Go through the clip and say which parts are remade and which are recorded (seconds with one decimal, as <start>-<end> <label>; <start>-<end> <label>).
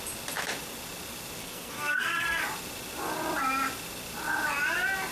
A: 0.0-1.4 recorded; 1.4-2.4 remade; 2.4-5.1 recorded